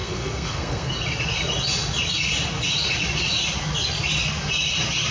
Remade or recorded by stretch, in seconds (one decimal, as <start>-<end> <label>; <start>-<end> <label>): 0.0-0.9 remade; 0.9-5.1 recorded